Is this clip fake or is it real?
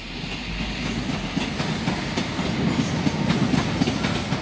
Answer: real